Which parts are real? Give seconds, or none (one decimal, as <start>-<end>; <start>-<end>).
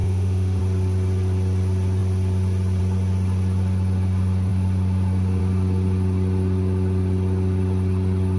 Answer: 0.6-8.4